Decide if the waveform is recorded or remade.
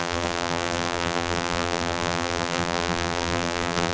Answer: remade